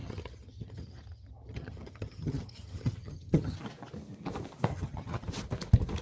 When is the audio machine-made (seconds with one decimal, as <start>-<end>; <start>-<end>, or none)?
0.0-3.6; 4.7-5.3